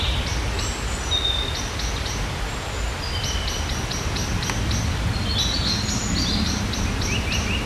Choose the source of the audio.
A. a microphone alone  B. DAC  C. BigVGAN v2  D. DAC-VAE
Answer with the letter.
A